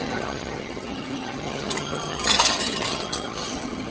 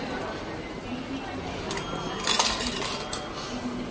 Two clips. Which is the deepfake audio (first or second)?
first